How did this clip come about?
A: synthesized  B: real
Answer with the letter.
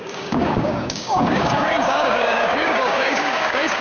A